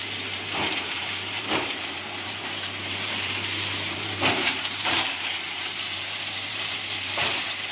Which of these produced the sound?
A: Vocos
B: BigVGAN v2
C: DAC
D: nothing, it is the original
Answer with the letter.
B